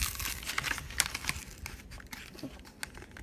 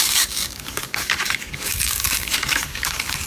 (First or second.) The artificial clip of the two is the second